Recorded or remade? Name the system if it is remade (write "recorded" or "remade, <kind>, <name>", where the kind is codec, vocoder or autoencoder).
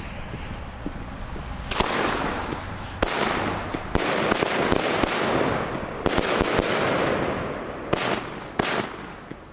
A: recorded